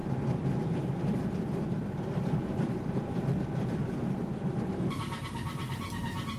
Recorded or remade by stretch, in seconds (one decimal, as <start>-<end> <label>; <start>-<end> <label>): 0.0-1.2 recorded; 1.2-5.0 remade; 5.0-6.4 recorded